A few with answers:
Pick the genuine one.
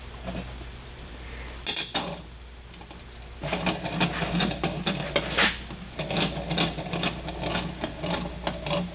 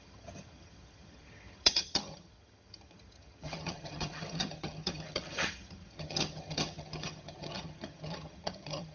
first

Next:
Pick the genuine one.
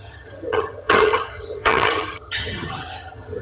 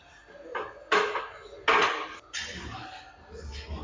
second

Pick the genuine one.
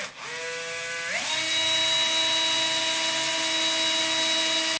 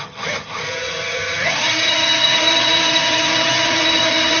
first